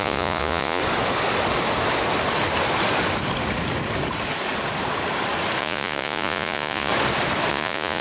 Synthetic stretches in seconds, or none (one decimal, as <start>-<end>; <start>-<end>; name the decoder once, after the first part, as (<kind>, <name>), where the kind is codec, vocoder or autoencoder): 0.0-0.8 (vocoder, Vocos); 5.6-6.9; 7.5-8.0